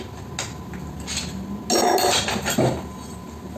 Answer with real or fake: real